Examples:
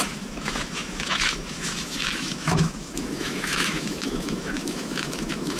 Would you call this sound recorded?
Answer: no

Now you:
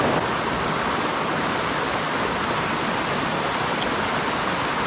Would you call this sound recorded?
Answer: yes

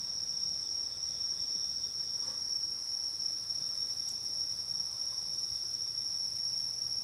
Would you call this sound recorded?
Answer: yes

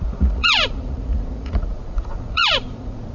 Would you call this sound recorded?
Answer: no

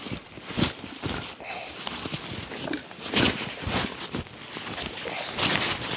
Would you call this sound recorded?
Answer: yes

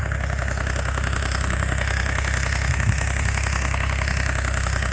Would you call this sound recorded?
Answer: no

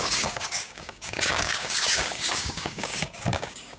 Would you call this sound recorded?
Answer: no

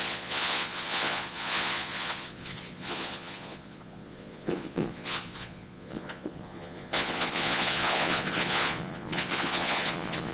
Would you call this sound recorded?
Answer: no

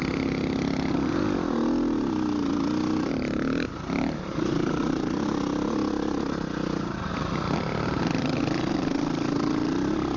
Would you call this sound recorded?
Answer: yes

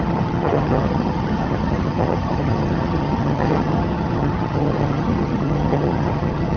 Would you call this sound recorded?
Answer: no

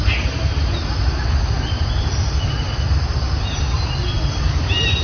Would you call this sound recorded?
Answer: yes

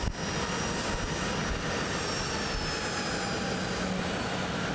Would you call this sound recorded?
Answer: yes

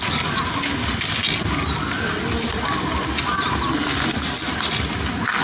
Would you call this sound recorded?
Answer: yes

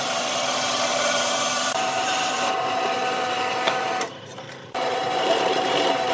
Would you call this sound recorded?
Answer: no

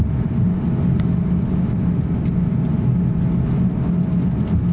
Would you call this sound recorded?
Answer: yes